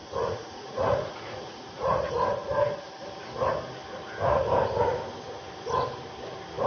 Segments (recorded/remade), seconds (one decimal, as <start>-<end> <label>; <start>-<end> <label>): 0.0-2.1 remade; 2.1-6.7 recorded